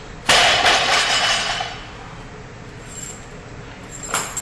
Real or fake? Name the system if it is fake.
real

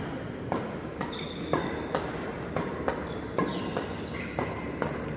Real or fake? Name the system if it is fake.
real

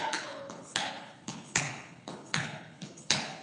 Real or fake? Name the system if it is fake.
fake, codec, HILCodec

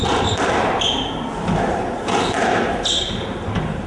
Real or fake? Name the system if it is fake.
real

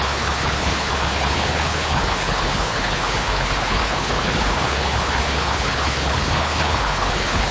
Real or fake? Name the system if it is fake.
fake, codec, HILCodec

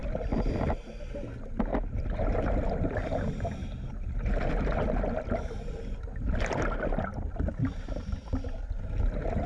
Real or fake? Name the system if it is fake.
real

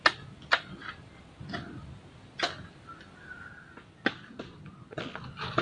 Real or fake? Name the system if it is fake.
real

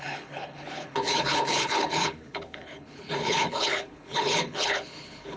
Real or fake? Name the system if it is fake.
fake, codec, HILCodec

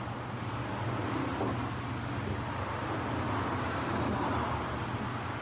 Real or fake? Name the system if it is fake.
real